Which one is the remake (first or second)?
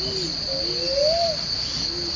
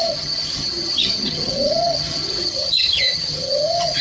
second